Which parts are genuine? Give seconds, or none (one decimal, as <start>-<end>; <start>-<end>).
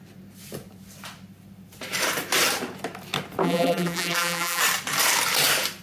0.0-3.4; 4.6-5.8